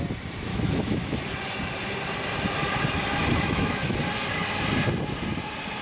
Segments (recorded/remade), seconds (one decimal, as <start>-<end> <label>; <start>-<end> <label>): 0.0-0.5 recorded; 0.5-1.2 remade; 1.2-3.2 recorded; 3.2-4.0 remade; 4.0-5.8 recorded